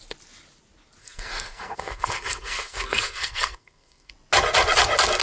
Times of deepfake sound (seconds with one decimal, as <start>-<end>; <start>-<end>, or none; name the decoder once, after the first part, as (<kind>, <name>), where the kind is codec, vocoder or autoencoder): 1.0-4.1 (codec, SNAC)